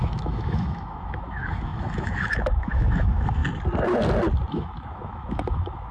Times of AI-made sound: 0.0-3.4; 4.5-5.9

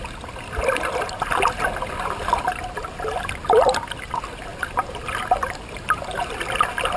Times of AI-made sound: none

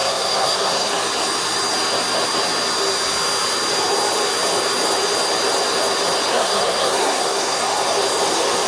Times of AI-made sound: 0.0-0.9; 6.3-7.6

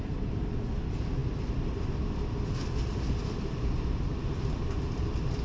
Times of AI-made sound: none

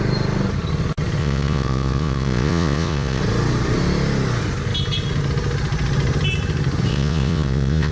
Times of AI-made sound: 1.2-3.2; 6.9-7.9